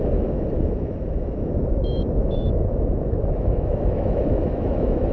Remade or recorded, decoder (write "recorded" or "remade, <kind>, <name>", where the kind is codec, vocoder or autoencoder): remade, autoencoder, DAC-VAE